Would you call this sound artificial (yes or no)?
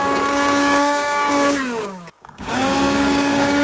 yes